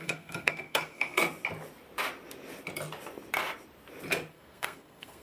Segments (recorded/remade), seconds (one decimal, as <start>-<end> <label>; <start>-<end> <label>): 0.0-1.2 remade; 1.2-4.3 recorded; 4.3-5.2 remade